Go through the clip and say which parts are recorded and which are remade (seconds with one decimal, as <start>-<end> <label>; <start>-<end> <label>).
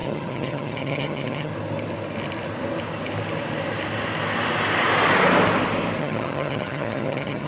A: 0.0-1.5 remade; 1.5-6.0 recorded; 6.0-7.5 remade